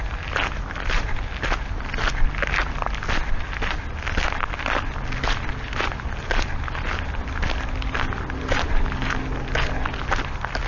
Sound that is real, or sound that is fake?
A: real